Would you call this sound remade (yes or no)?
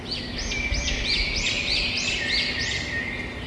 no